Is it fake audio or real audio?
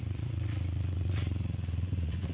fake